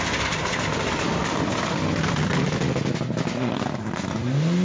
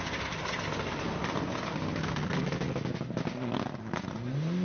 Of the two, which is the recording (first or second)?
second